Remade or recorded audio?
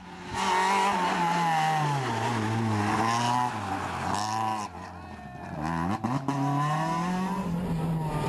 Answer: recorded